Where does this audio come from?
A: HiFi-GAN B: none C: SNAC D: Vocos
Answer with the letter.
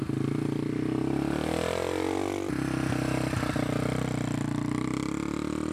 B